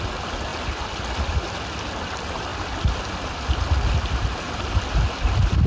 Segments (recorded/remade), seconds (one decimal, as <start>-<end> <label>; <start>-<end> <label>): 0.0-2.5 recorded; 2.5-3.9 remade; 3.9-5.7 recorded